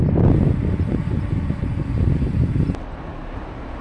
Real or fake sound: real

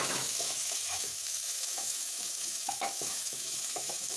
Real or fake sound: fake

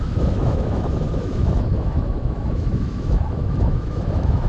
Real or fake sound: fake